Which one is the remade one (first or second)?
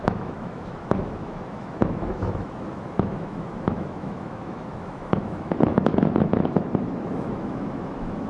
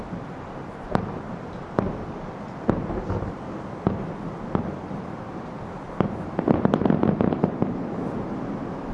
first